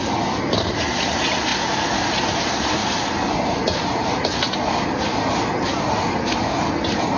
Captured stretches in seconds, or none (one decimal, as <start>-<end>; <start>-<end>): 0.0-7.2